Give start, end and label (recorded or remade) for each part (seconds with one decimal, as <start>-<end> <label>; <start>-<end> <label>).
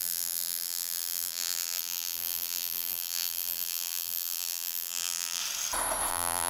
0.0-5.4 remade; 5.4-6.1 recorded; 6.1-6.5 remade